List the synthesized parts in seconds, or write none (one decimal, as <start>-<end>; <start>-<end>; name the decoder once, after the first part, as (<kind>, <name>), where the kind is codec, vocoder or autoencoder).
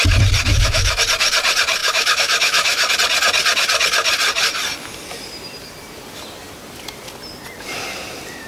0.5-1.0 (autoencoder, DAC-VAE); 1.8-2.9